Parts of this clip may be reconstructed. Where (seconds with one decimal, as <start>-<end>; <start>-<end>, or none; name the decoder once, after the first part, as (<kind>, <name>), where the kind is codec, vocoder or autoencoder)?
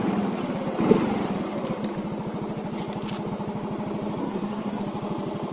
4.2-4.8 (codec, SNAC)